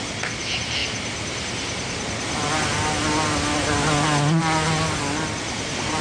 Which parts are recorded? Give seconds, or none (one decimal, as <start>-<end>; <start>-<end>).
0.0-6.0